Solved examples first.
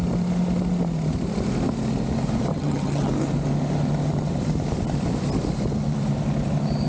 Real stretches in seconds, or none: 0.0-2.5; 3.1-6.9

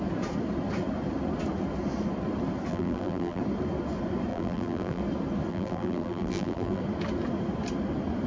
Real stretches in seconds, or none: 0.0-2.7; 3.4-4.3; 5.0-5.5; 6.8-8.3

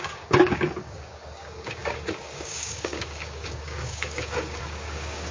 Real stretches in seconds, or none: none

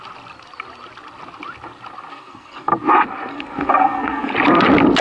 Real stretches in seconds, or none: 0.0-2.1; 2.7-3.3; 4.3-5.0

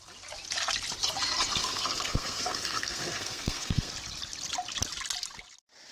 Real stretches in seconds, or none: 0.0-1.6; 3.9-5.9

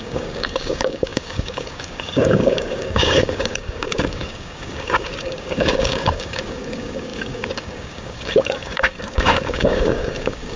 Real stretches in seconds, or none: none

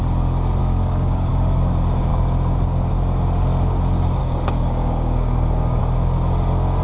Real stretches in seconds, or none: 0.0-0.6; 1.3-4.2; 5.8-6.8

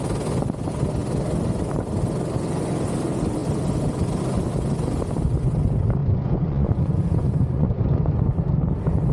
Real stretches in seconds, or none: 0.0-6.0; 8.1-9.1